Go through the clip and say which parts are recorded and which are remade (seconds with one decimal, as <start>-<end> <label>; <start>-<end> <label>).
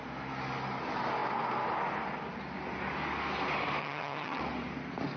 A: 0.0-3.8 recorded; 3.8-4.4 remade; 4.4-5.2 recorded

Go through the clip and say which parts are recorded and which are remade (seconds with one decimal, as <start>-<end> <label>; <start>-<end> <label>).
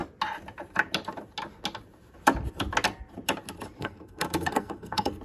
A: 0.0-3.8 recorded; 3.8-5.2 remade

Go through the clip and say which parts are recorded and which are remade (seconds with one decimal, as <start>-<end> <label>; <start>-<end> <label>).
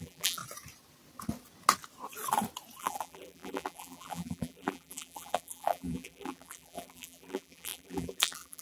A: 0.0-0.4 remade; 0.4-2.8 recorded; 2.8-8.6 remade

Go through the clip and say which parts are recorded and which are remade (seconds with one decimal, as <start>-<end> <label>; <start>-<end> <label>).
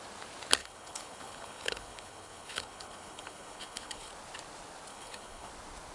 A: 0.0-0.6 recorded; 0.6-4.1 remade; 4.1-4.9 recorded; 4.9-5.5 remade; 5.5-5.9 recorded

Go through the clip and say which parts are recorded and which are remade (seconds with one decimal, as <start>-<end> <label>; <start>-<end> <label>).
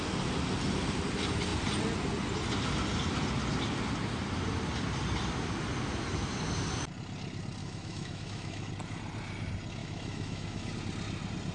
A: 0.0-7.6 recorded; 7.6-8.7 remade; 8.7-9.8 recorded; 9.8-10.7 remade; 10.7-11.5 recorded